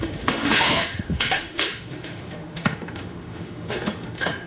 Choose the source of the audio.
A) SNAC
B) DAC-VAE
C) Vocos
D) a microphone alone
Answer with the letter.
B